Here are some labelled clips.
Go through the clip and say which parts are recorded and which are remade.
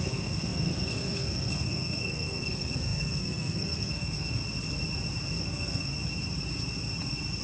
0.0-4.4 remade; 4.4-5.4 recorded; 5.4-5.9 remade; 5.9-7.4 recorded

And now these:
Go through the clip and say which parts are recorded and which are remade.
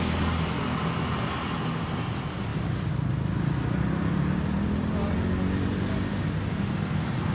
0.0-7.3 recorded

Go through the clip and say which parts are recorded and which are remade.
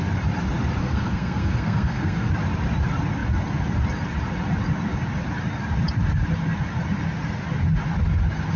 0.0-0.8 recorded; 0.8-2.3 remade; 2.3-8.6 recorded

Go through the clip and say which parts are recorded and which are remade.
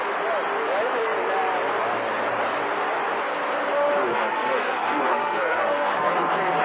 0.0-4.1 recorded; 4.1-6.1 remade; 6.1-6.6 recorded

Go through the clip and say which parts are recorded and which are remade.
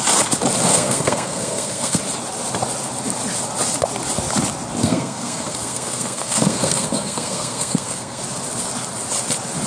0.0-0.7 recorded; 0.7-2.0 remade; 2.0-4.8 recorded; 4.8-8.2 remade; 8.2-9.7 recorded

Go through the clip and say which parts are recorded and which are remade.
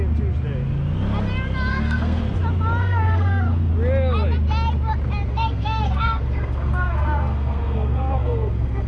0.0-1.7 recorded; 1.7-2.2 remade; 2.2-2.8 recorded; 2.8-3.7 remade; 3.7-5.3 recorded; 5.3-8.9 remade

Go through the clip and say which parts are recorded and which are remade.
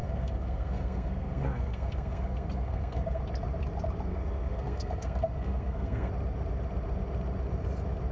0.0-3.2 remade; 3.2-4.1 recorded; 4.1-6.1 remade; 6.1-8.1 recorded